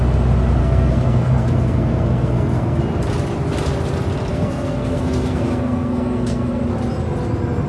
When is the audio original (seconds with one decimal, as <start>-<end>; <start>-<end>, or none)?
0.0-0.6; 2.8-4.3; 6.6-7.7